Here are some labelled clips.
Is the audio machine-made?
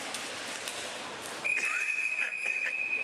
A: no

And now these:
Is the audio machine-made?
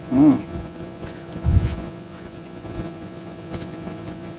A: yes